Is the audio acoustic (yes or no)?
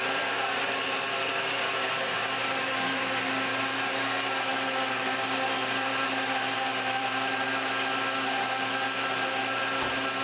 no